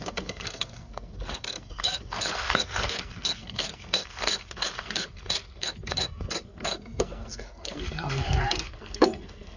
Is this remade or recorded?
remade